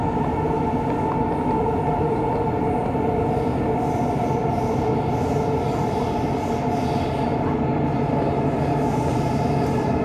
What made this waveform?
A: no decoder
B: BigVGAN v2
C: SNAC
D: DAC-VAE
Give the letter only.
A